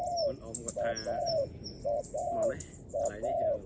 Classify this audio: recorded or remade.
recorded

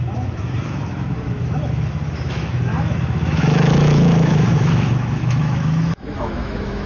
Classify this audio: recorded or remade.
remade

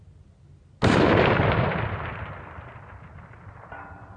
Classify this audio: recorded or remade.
recorded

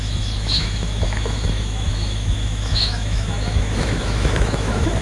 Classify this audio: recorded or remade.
remade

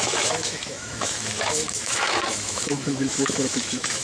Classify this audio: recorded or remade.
remade